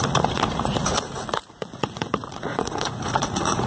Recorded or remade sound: remade